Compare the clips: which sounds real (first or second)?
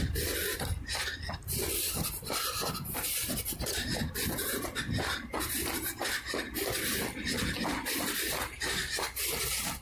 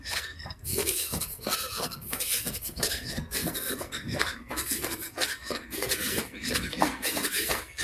first